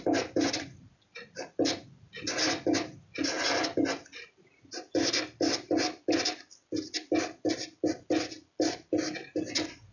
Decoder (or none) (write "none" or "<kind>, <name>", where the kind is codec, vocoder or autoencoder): none